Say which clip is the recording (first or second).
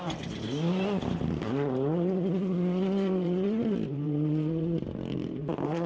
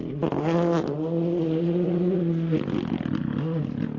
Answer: second